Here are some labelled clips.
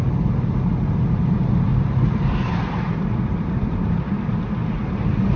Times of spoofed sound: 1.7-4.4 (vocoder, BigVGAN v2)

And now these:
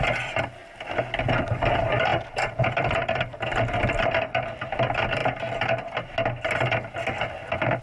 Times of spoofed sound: 0.0-0.6 (vocoder, BigVGAN v2); 1.5-5.2

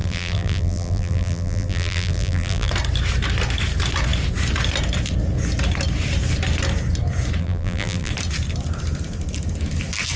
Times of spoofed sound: 0.0-2.7 (vocoder, BigVGAN v2); 7.4-8.1

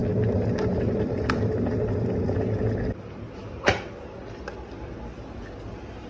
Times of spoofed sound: 3.4-3.9 (vocoder, BigVGAN v2)

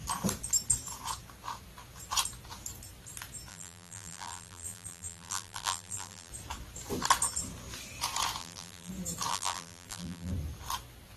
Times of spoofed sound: 3.5-6.3 (vocoder, BigVGAN v2); 8.4-8.9; 9.3-10.3

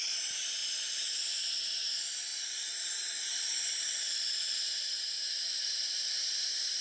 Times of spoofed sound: 2.3-6.8 (vocoder, BigVGAN v2)